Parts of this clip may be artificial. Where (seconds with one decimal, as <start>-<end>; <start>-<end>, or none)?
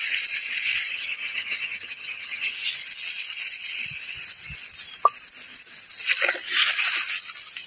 0.9-2.5